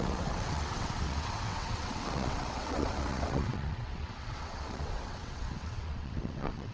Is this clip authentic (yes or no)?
no